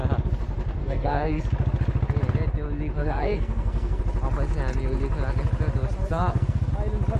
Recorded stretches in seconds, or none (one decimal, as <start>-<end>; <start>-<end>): 0.0-0.8; 1.4-3.0; 4.0-6.0; 6.7-7.2